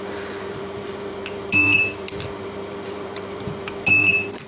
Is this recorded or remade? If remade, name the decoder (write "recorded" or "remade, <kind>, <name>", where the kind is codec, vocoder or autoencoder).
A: remade, vocoder, BigVGAN v2